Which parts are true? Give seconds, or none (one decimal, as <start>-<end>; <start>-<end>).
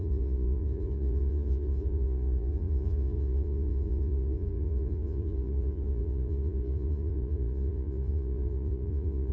none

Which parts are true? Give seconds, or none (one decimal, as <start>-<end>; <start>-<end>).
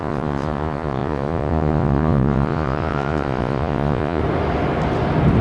4.2-5.4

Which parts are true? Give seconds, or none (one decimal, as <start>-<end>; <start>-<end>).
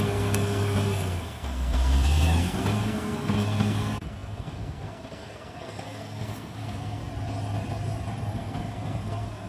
7.0-8.3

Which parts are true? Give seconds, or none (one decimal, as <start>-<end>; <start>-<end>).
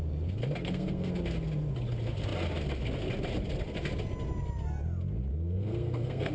0.0-0.6; 1.1-5.3